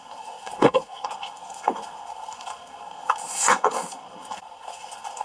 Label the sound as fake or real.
fake